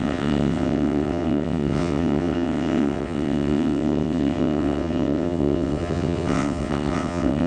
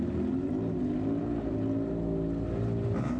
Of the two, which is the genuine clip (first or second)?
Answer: second